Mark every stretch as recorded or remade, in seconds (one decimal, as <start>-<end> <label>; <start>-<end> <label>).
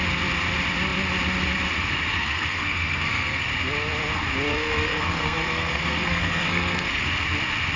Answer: 0.0-2.1 recorded; 2.1-3.5 remade; 3.5-4.5 recorded; 4.5-7.0 remade; 7.0-7.8 recorded